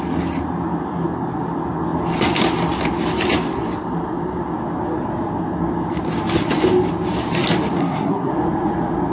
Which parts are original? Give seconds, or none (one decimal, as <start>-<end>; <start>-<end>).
0.0-7.8; 8.3-9.1